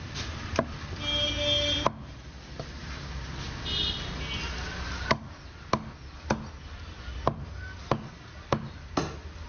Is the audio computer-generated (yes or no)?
no